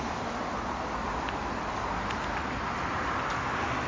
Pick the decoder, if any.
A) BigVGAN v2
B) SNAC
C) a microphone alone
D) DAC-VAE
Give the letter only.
C